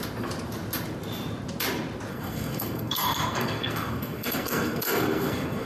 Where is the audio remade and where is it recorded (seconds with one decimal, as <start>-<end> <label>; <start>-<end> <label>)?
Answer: 0.0-2.1 recorded; 2.1-5.7 remade